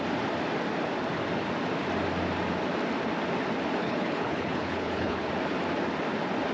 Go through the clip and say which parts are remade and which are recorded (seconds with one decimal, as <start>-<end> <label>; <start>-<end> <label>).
0.0-3.8 recorded; 3.8-5.3 remade; 5.3-6.5 recorded